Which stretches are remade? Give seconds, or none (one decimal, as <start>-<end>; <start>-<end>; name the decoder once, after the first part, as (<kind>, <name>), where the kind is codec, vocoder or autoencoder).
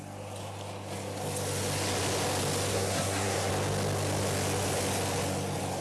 2.7-3.5 (codec, SNAC)